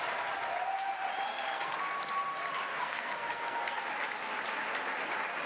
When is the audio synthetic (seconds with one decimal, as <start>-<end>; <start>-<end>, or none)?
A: 1.3-1.8; 2.7-3.8